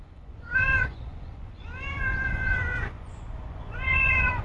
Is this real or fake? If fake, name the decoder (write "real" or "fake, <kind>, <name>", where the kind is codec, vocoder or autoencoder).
fake, vocoder, Vocos